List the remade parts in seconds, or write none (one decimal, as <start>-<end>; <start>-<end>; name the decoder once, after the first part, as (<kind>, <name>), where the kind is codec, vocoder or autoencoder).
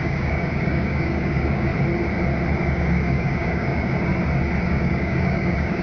0.0-1.7 (codec, DAC); 2.6-4.1; 4.7-5.8